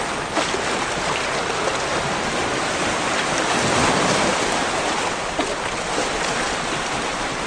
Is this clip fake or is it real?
real